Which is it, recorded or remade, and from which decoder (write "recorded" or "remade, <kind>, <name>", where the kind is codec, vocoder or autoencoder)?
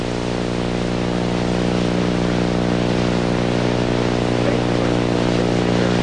recorded